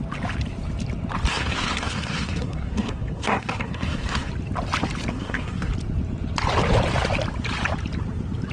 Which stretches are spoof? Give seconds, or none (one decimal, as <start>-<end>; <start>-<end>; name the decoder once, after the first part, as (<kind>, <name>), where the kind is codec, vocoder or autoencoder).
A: 1.3-4.3 (codec, SNAC); 5.1-5.7